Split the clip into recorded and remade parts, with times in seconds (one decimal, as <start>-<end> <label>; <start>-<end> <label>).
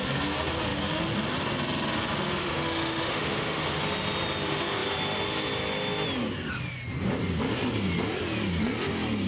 0.0-2.4 recorded; 2.4-3.8 remade; 3.8-9.3 recorded